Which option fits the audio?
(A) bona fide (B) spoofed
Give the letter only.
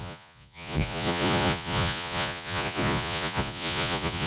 B